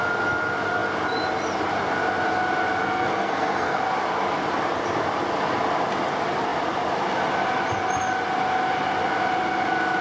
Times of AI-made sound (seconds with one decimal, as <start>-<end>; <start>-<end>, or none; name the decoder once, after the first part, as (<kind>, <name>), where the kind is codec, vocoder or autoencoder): 2.8-3.8 (codec, SNAC)